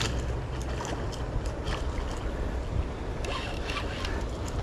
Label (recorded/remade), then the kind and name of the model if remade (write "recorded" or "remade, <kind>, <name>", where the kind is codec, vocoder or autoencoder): recorded